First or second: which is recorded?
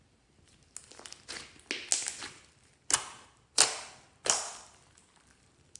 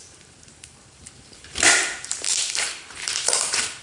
first